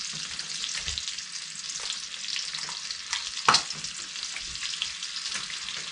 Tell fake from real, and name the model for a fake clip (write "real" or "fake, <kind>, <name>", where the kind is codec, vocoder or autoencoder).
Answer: real